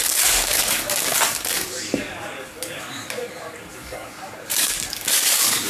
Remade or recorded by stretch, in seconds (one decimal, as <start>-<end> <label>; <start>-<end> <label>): 0.0-5.7 remade